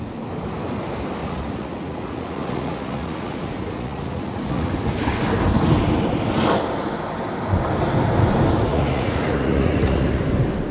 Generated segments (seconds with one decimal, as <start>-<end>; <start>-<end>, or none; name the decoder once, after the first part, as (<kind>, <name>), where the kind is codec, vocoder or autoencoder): 1.2-4.7 (vocoder, Vocos); 8.7-10.2